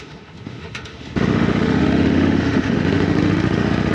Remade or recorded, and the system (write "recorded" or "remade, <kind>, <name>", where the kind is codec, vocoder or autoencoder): remade, autoencoder, DAC-VAE